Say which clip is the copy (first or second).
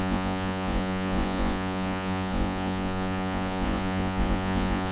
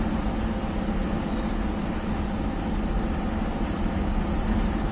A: first